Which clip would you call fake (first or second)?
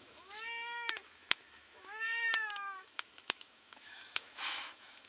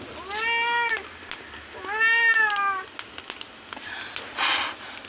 first